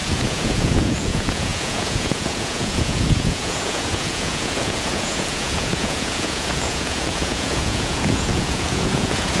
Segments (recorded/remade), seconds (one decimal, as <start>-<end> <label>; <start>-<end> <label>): 0.0-9.4 remade